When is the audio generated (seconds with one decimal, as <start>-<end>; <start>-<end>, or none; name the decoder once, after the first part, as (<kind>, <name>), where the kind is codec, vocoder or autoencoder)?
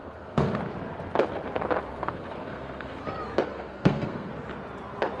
0.0-0.6 (codec, SNAC); 1.9-3.0; 3.5-4.3